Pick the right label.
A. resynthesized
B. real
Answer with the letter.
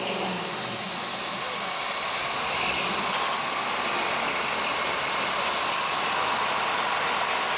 B